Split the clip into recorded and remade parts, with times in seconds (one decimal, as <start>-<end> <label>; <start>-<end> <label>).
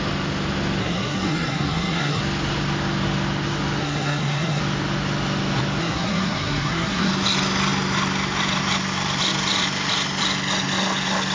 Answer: 0.0-0.8 recorded; 0.8-2.2 remade; 2.2-3.8 recorded; 3.8-4.6 remade; 4.6-5.8 recorded; 5.8-7.1 remade; 7.1-11.3 recorded